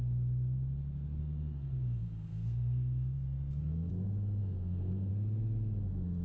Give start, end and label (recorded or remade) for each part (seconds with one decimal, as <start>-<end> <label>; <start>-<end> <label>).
0.0-1.2 recorded; 1.2-3.9 remade; 3.9-4.4 recorded; 4.4-5.1 remade; 5.1-6.2 recorded